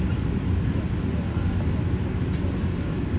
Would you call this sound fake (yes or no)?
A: no